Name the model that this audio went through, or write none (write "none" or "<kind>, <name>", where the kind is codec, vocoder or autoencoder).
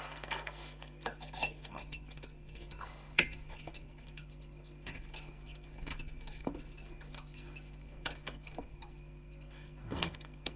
codec, SNAC